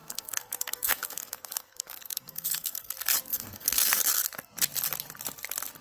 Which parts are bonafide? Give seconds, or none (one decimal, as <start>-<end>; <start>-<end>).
2.9-3.3; 4.0-5.8